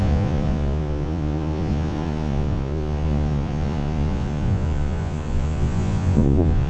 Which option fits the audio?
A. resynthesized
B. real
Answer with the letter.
A